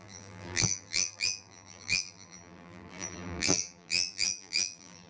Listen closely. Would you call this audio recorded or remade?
remade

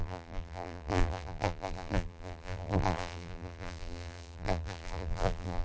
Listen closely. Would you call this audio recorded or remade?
remade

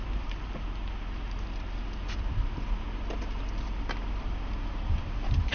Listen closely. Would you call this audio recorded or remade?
remade